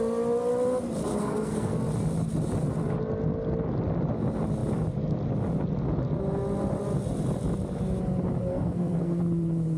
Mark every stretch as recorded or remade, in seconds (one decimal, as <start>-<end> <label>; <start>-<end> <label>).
0.0-1.1 recorded; 1.1-1.8 remade; 1.8-8.5 recorded; 8.5-9.2 remade; 9.2-9.8 recorded